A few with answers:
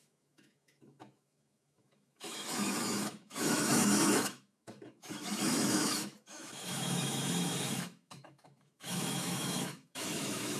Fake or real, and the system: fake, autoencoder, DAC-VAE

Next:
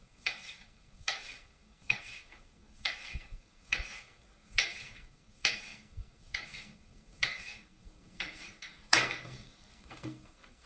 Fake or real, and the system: fake, codec, SNAC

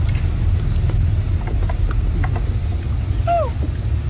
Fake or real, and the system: real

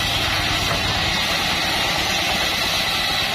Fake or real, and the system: real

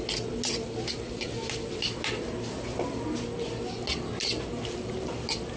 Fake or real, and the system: real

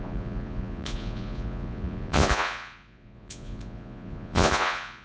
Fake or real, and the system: fake, vocoder, Vocos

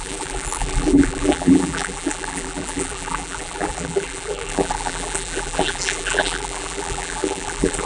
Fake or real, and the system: fake, vocoder, BigVGAN v2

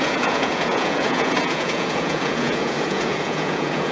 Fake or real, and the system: fake, vocoder, Vocos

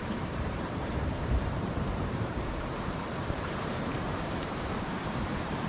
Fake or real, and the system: fake, vocoder, BigVGAN v2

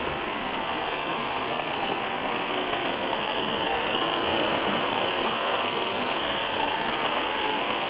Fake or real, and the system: fake, codec, SNAC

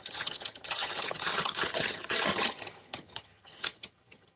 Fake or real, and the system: fake, vocoder, HiFi-GAN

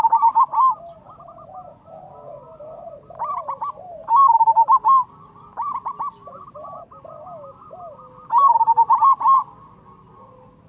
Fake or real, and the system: real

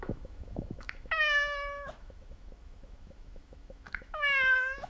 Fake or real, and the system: fake, autoencoder, DAC-VAE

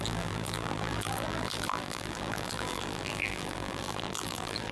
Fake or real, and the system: fake, vocoder, BigVGAN v2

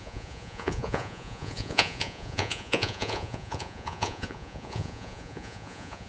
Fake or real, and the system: fake, vocoder, Vocos